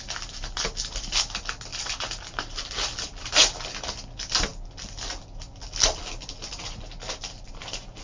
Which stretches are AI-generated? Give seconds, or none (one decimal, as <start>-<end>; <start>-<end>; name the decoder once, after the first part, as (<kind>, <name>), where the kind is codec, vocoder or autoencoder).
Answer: 1.7-2.7 (vocoder, BigVGAN v2)